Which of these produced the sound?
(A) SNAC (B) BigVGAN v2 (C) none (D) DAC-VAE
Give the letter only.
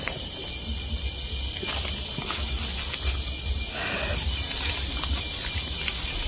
C